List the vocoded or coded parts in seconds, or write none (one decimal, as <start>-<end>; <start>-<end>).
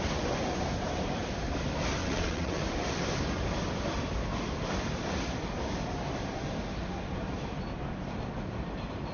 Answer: 2.0-2.6